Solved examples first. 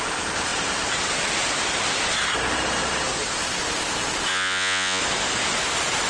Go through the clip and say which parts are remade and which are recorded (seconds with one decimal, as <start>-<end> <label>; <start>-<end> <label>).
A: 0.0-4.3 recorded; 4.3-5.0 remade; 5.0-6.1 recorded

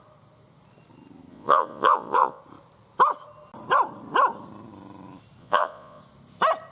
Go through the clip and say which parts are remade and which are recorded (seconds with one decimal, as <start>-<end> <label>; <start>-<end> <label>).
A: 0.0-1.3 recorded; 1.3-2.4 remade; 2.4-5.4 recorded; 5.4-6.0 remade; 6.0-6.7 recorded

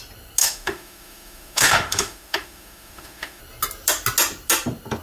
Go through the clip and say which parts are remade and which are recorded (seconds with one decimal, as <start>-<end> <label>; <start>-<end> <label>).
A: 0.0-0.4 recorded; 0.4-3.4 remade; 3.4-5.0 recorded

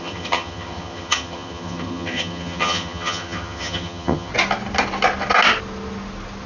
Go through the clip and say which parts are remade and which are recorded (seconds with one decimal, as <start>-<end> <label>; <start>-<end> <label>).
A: 0.0-4.3 remade; 4.3-6.5 recorded

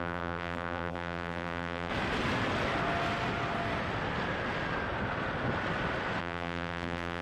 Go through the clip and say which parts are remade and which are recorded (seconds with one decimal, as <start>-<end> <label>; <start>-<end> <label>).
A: 0.0-1.9 remade; 1.9-6.2 recorded; 6.2-7.2 remade

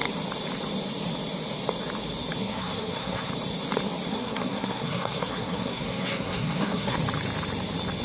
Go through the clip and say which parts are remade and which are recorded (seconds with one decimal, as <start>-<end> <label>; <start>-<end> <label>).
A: 0.0-2.4 recorded; 2.4-3.3 remade; 3.3-4.1 recorded; 4.1-7.0 remade; 7.0-8.0 recorded

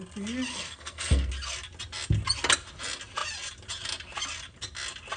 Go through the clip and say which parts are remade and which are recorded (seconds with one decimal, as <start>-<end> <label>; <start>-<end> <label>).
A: 0.0-0.5 recorded; 0.5-1.3 remade; 1.3-5.2 recorded